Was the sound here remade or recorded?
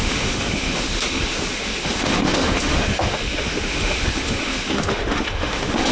remade